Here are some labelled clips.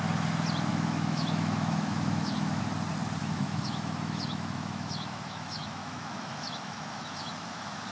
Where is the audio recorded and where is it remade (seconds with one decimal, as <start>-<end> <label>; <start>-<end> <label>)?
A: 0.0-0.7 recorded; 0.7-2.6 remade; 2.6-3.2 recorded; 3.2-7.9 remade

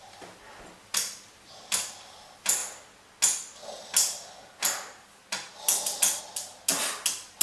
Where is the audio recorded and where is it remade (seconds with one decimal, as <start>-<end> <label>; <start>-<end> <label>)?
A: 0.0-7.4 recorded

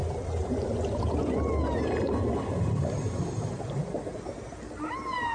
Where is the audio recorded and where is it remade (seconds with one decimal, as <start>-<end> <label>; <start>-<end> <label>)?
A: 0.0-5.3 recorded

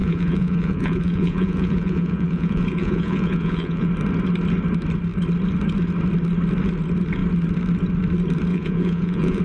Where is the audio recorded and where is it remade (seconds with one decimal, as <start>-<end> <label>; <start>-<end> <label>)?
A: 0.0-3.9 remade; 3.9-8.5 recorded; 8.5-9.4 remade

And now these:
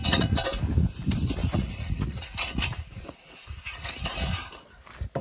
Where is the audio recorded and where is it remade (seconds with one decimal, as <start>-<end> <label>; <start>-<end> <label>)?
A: 0.0-0.6 remade; 0.6-1.4 recorded; 1.4-4.5 remade; 4.5-5.2 recorded

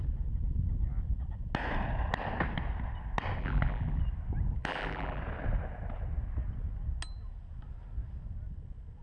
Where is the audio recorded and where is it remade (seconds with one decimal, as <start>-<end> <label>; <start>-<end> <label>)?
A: 0.0-3.4 recorded; 3.4-4.0 remade; 4.0-4.6 recorded; 4.6-5.2 remade; 5.2-9.0 recorded

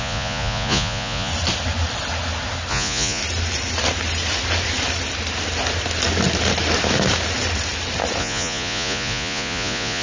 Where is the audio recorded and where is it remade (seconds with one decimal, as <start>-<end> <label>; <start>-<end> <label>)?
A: 0.0-1.3 remade; 1.3-2.7 recorded; 2.7-3.2 remade; 3.2-8.2 recorded; 8.2-10.0 remade

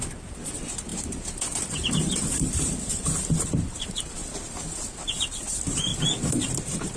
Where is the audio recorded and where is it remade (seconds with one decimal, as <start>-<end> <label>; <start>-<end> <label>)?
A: 0.0-4.2 remade; 4.2-5.0 recorded; 5.0-5.9 remade; 5.9-6.6 recorded; 6.6-7.0 remade